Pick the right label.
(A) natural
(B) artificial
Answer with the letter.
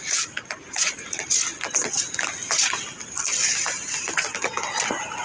A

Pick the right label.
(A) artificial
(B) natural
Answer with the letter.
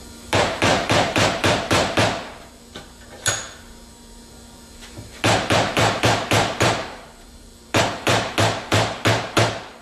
A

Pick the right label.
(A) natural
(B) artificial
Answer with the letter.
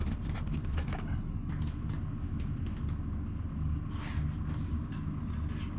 A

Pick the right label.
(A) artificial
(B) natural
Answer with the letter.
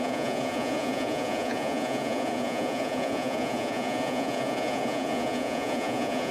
A